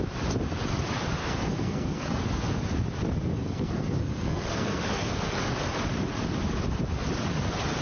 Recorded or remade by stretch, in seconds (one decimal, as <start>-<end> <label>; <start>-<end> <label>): 0.0-1.2 recorded; 1.2-2.2 remade; 2.2-3.3 recorded; 3.3-5.5 remade; 5.5-7.8 recorded